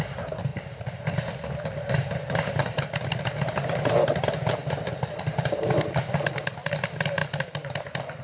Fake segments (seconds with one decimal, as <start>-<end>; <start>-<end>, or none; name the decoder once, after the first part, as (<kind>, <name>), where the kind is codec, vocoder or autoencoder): 0.5-1.0 (vocoder, BigVGAN v2); 7.2-8.2